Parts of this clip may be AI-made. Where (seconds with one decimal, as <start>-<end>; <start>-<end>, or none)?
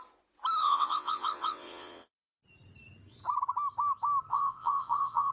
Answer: 0.6-2.4; 4.3-5.3